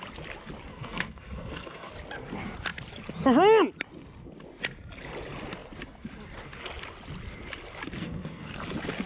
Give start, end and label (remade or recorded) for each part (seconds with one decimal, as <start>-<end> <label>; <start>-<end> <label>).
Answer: 0.0-0.7 recorded; 0.7-1.9 remade; 1.9-8.0 recorded; 8.0-8.5 remade; 8.5-9.1 recorded